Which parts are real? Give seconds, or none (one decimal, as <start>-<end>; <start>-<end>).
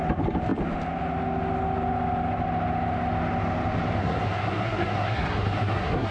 0.0-4.0